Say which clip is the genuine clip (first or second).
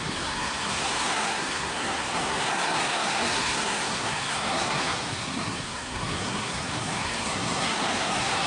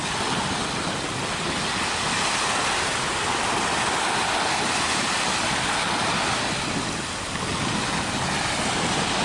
second